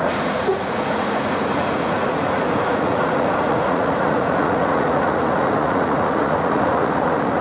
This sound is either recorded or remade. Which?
remade